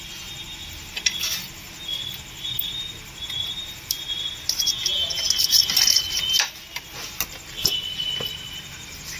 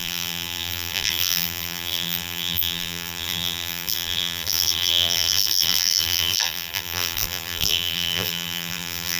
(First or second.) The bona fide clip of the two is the first